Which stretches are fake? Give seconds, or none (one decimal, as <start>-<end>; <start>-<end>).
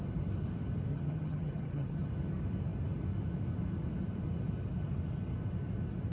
0.9-2.1